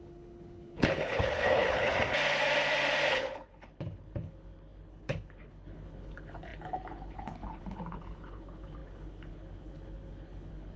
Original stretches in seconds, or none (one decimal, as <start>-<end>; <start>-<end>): 1.9-3.1